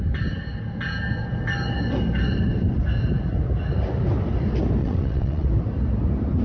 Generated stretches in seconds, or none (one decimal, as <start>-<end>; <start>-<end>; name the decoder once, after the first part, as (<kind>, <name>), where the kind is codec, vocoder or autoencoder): 4.8-5.5 (vocoder, WaveNeXt)